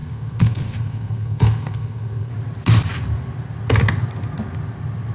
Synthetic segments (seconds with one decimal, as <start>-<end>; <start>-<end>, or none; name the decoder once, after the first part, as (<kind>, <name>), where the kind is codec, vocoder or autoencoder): 0.0-2.3 (codec, SNAC)